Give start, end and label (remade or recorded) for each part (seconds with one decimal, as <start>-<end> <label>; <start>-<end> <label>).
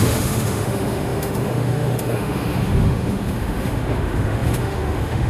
0.0-5.3 remade